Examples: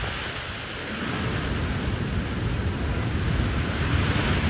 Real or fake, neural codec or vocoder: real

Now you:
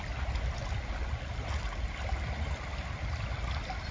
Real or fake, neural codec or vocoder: real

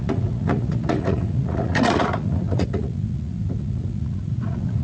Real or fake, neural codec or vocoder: fake, vocoder, Vocos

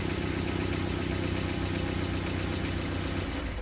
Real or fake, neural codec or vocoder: real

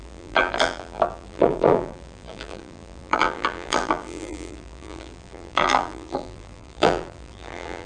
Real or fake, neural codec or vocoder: fake, vocoder, BigVGAN v2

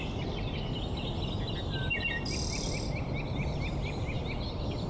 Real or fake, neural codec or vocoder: real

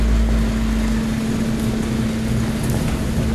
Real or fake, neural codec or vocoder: real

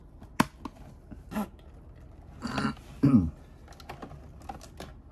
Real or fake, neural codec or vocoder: real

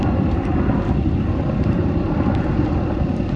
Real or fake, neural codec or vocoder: fake, vocoder, BigVGAN v2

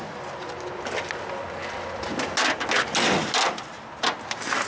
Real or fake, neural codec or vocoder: real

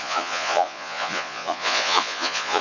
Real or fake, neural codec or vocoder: fake, vocoder, Vocos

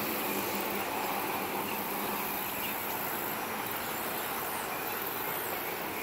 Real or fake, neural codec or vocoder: real